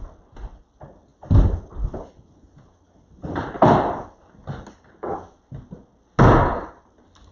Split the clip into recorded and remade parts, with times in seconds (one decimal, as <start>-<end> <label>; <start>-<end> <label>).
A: 0.0-7.3 recorded